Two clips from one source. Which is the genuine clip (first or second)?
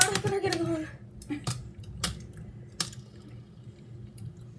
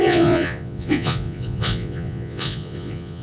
first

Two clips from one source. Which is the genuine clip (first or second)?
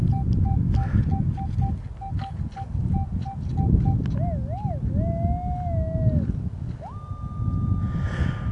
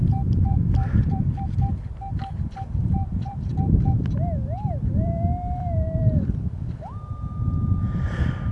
first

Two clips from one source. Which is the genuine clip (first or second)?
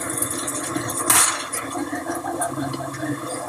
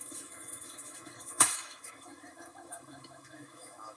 first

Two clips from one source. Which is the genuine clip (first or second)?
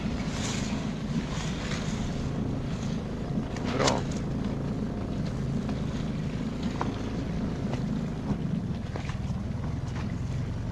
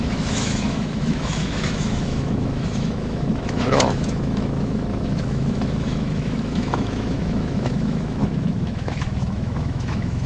first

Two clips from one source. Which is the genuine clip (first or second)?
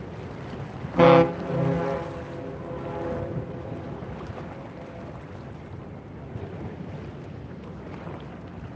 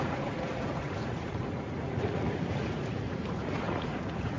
first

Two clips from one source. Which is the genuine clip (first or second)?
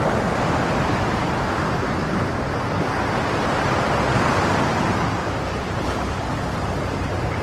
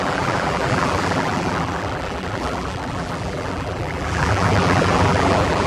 first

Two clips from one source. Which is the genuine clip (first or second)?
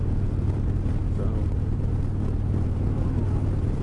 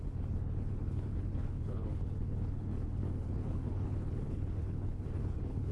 first